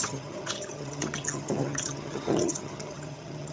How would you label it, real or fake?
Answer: fake